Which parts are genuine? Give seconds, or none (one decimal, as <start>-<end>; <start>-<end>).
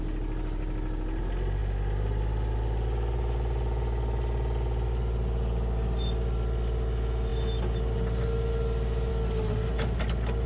0.0-10.5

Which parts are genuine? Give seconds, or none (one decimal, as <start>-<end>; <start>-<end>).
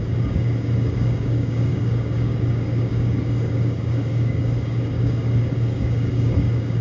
none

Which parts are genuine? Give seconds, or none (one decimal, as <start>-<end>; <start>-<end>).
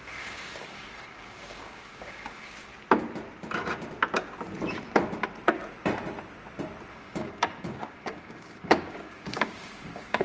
2.7-6.9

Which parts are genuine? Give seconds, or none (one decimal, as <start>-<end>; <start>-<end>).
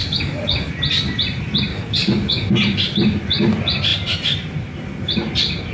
0.7-1.7; 2.5-5.7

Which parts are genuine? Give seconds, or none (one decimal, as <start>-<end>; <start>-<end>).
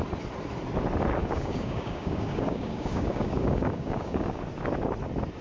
0.0-1.2; 4.4-5.4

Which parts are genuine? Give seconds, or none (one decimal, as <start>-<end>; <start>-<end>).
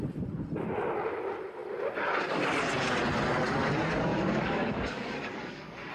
0.0-4.1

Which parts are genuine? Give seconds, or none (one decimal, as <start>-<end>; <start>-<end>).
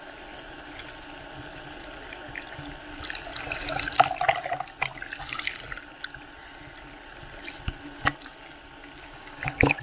0.0-9.0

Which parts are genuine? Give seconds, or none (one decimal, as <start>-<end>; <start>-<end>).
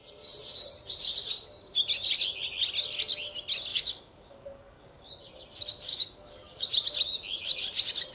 0.0-3.7; 5.1-5.9; 6.7-8.1